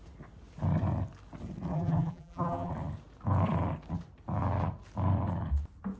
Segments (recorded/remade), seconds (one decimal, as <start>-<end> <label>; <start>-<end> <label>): 0.0-1.7 recorded; 1.7-2.7 remade; 2.7-6.0 recorded